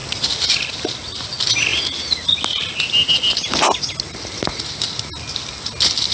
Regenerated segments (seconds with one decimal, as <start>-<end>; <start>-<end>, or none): none